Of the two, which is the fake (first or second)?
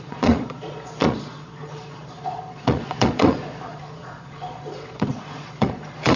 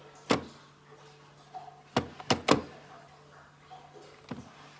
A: first